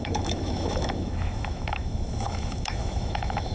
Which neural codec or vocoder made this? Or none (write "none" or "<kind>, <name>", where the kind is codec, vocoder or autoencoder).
autoencoder, DAC-VAE